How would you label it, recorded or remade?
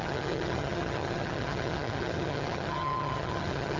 remade